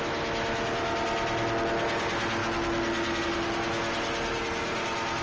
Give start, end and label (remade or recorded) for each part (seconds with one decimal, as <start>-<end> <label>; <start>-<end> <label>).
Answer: 0.0-5.2 recorded